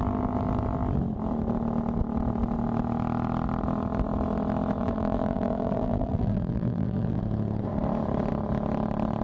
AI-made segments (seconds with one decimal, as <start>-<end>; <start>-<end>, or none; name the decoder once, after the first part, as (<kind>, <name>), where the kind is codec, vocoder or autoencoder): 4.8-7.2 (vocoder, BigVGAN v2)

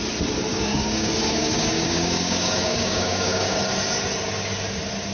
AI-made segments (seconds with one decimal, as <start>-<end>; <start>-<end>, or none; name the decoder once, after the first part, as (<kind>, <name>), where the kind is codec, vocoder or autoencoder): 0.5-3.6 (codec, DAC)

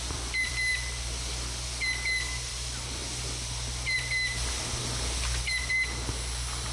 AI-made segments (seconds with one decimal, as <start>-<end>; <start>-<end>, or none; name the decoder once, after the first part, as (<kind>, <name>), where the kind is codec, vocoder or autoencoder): 0.0-0.7 (vocoder, BigVGAN v2); 2.5-3.0; 5.7-6.7